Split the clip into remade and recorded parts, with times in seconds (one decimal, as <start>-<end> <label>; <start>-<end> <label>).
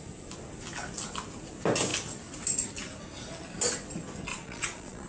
0.0-4.3 recorded; 4.3-5.1 remade